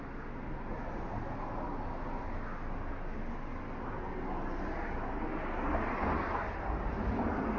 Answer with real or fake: real